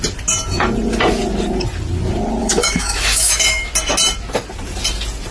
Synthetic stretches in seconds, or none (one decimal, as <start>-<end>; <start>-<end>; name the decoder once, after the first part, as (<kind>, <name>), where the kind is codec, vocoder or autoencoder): 2.4-3.7 (autoencoder, DAC-VAE)